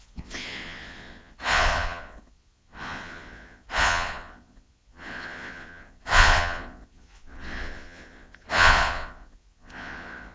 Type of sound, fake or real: fake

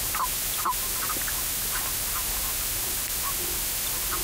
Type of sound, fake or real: real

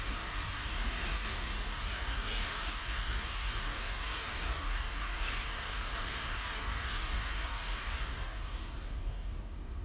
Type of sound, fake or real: fake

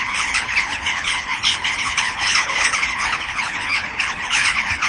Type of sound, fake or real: fake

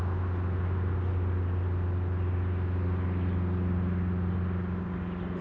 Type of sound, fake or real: real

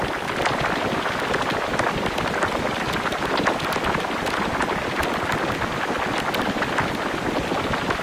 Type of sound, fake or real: real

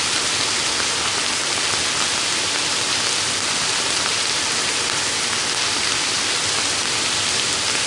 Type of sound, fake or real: real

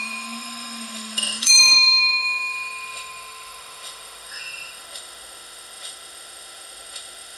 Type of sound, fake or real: fake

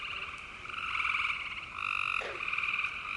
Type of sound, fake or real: real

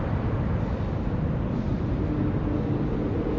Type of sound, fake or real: real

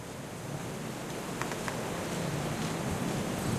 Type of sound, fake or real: real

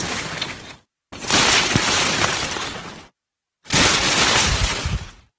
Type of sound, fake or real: real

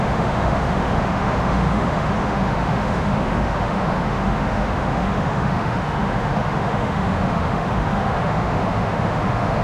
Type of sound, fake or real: fake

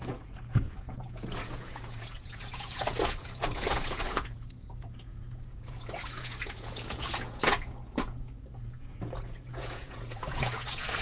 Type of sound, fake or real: fake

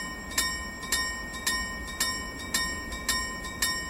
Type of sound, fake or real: real